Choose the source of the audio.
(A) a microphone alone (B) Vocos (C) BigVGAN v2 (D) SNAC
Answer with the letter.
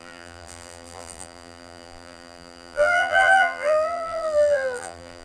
C